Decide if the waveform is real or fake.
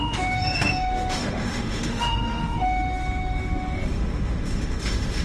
fake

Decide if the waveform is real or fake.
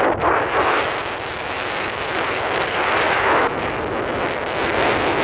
real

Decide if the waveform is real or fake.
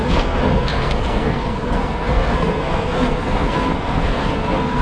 fake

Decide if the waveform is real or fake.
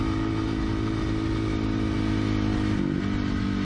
real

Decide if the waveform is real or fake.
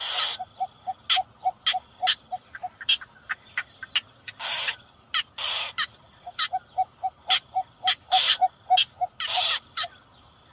real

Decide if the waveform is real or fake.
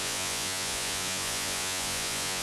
fake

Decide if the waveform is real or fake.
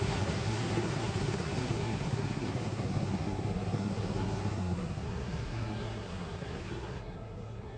fake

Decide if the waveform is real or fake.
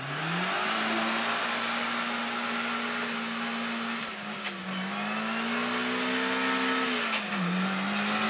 real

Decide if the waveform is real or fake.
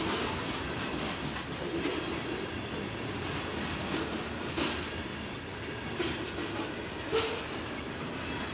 real